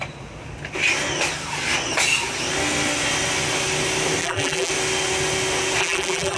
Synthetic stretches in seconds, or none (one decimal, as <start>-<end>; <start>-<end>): 4.2-4.7; 5.8-6.4